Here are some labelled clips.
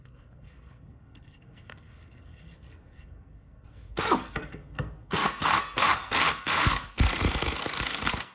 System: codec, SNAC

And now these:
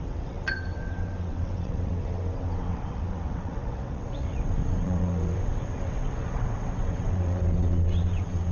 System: vocoder, WaveNeXt